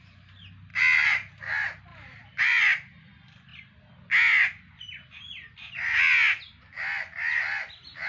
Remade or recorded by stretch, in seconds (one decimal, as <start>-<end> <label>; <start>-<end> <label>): 0.0-1.9 recorded; 1.9-2.6 remade; 2.6-8.1 recorded